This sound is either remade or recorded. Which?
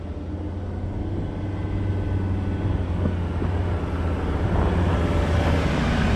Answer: recorded